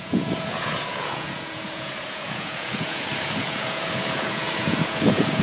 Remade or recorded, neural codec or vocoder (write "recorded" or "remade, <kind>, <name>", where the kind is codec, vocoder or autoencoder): remade, vocoder, Vocos